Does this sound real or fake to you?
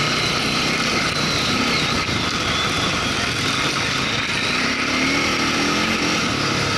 real